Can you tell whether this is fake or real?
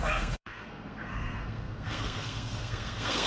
fake